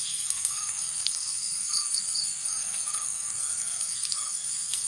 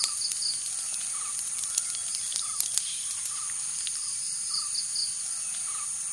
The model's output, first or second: first